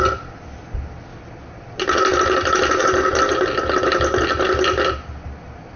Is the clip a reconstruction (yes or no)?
no